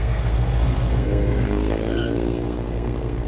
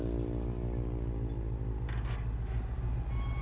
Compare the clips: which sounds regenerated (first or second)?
first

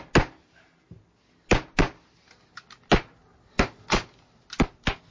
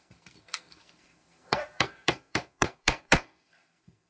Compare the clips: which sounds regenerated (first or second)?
second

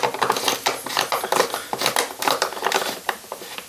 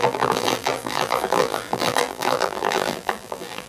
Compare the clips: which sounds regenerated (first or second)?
second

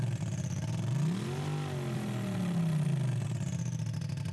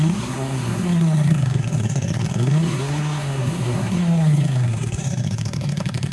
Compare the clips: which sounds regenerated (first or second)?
second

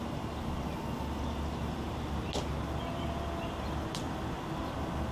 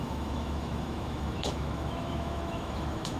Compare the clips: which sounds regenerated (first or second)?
second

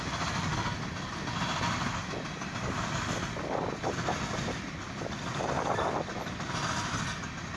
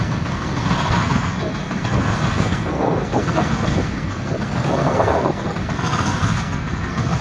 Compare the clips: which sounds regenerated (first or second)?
second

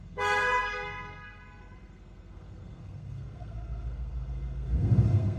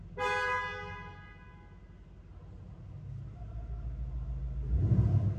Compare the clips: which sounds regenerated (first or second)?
first